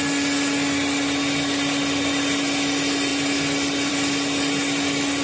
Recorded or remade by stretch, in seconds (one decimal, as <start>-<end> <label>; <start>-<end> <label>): 0.0-5.2 recorded